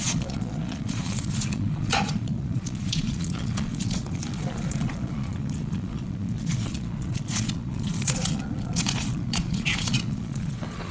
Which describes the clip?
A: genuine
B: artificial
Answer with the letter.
B